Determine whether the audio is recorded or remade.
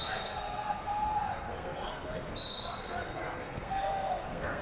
remade